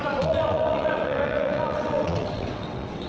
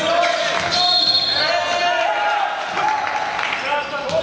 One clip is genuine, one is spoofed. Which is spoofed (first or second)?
first